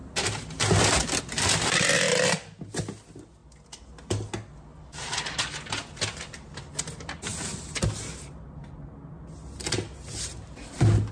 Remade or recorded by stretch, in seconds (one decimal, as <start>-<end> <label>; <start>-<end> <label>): 0.0-11.1 recorded